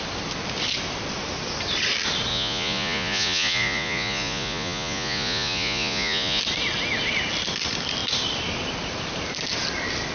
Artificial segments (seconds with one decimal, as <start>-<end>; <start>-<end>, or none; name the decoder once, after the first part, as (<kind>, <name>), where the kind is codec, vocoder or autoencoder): 2.3-6.4 (vocoder, Vocos)